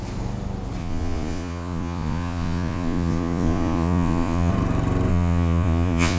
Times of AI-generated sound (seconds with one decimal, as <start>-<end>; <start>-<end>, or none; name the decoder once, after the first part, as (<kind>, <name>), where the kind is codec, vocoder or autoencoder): 0.8-4.5 (vocoder, Vocos); 5.1-6.2